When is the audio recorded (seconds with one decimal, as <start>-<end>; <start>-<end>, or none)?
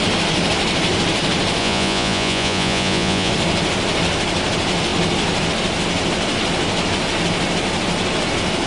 0.0-1.6; 3.3-8.7